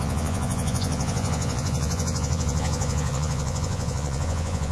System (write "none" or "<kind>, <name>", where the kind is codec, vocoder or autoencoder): vocoder, Vocos